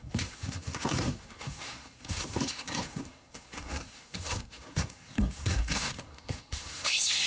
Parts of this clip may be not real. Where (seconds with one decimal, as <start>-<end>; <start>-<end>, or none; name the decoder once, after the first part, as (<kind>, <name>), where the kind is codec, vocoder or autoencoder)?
0.0-7.3 (codec, SNAC)